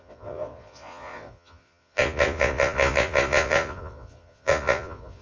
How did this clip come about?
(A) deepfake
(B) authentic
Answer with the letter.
A